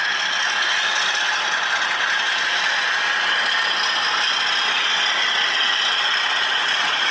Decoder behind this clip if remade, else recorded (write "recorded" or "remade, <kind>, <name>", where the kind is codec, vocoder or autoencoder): recorded